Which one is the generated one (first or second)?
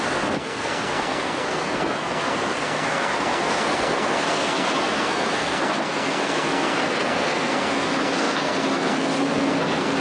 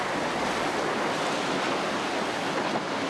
first